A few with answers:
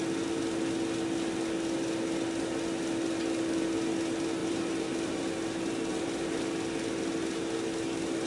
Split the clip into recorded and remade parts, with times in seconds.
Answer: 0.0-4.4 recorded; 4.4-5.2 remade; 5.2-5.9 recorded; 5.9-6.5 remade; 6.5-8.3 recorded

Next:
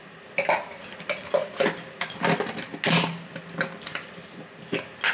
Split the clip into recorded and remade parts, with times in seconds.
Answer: 0.0-5.1 recorded